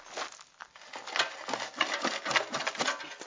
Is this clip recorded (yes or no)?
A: yes